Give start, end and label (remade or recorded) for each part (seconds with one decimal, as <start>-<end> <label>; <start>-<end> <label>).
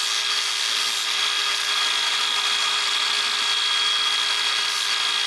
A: 0.0-5.3 recorded